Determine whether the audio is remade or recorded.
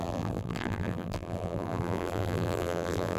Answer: remade